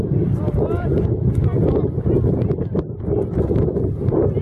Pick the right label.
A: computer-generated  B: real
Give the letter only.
B